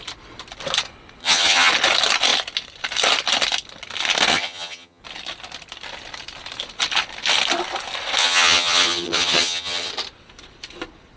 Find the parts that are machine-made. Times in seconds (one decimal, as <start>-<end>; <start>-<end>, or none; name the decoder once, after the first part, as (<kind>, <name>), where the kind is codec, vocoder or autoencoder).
1.2-1.7 (vocoder, HiFi-GAN); 4.3-5.0; 8.2-9.9